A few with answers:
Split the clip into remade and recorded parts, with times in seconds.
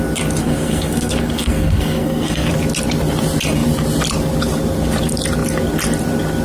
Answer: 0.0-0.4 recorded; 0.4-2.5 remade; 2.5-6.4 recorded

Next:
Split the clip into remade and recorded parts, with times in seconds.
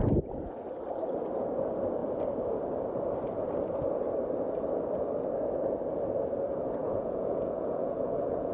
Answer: 0.0-6.8 recorded; 6.8-8.5 remade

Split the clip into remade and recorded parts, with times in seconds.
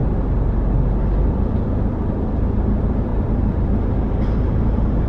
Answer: 0.0-3.1 recorded; 3.1-5.1 remade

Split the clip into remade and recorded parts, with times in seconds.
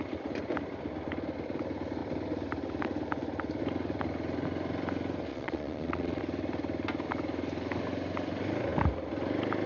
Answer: 0.0-5.3 recorded; 5.3-6.2 remade; 6.2-9.7 recorded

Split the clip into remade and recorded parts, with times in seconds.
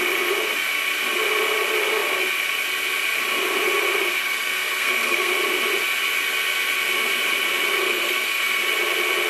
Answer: 0.0-4.2 recorded; 4.2-5.3 remade; 5.3-7.8 recorded; 7.8-8.6 remade; 8.6-9.3 recorded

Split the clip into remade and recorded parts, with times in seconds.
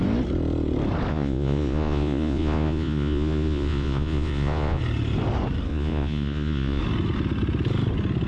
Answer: 0.0-1.1 recorded; 1.1-4.8 remade; 4.8-5.7 recorded; 5.7-6.8 remade; 6.8-8.3 recorded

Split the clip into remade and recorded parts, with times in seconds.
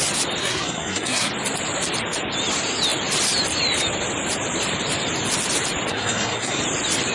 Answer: 0.0-0.4 recorded; 0.4-1.3 remade; 1.3-5.9 recorded; 5.9-6.6 remade; 6.6-7.1 recorded